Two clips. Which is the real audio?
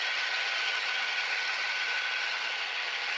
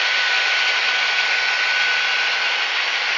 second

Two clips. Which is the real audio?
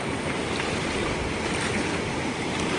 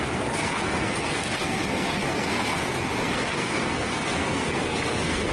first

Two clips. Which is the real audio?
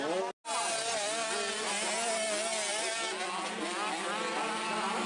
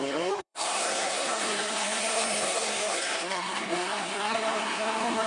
first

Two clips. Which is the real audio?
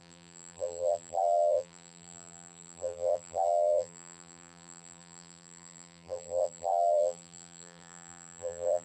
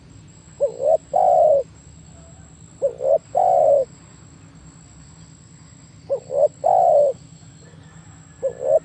second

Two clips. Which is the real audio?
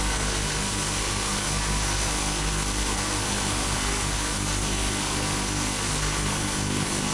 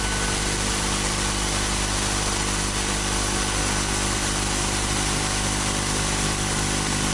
second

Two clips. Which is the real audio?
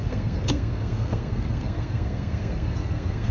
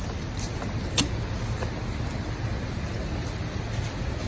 second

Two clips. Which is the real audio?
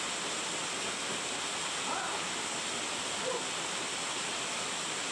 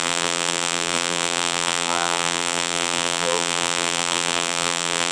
first